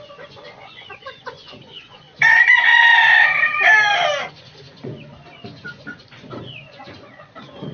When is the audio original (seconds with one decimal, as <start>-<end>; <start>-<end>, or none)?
2.7-4.3